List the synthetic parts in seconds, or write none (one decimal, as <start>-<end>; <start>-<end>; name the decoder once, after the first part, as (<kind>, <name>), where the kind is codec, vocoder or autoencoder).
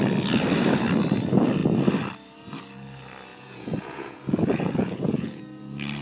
3.3-5.4 (vocoder, Vocos)